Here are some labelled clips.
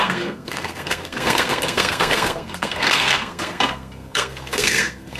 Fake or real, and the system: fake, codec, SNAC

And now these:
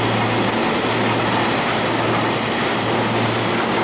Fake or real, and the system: real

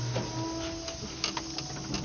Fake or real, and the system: real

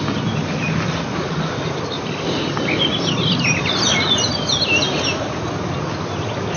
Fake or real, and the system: real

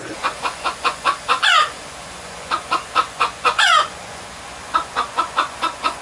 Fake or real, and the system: fake, vocoder, Vocos